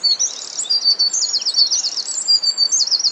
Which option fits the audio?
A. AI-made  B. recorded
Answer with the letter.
B